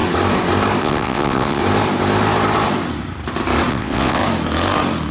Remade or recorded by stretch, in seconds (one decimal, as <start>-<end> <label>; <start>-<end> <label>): 0.0-0.8 recorded; 0.8-1.6 remade; 1.6-3.7 recorded; 3.7-4.2 remade; 4.2-5.1 recorded